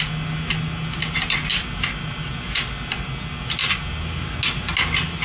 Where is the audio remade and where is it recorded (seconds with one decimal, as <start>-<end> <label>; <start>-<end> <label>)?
0.0-5.2 recorded